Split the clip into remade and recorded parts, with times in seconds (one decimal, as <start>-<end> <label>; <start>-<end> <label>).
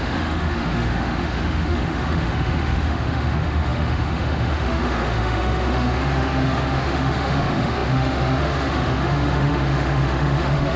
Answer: 0.0-10.8 remade